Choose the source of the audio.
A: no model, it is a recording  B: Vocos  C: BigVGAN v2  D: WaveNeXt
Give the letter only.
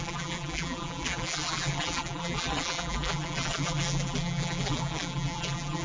C